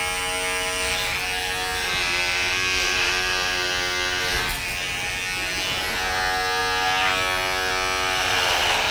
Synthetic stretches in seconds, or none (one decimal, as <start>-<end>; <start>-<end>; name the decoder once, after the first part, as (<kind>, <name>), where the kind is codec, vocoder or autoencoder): none